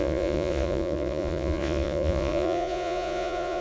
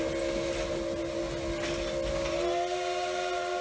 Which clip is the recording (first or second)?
second